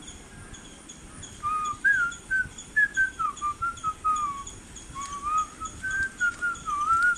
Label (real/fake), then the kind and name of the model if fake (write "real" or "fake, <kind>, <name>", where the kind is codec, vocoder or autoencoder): real